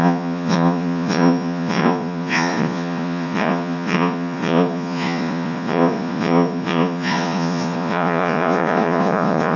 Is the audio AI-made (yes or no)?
yes